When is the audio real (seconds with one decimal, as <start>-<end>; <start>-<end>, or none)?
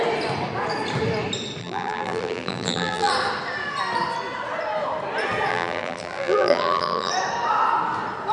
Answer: 0.0-1.6; 3.1-5.5; 7.1-8.3